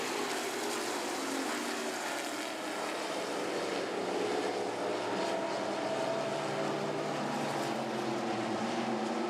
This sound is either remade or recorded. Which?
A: recorded